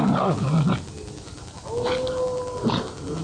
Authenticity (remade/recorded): recorded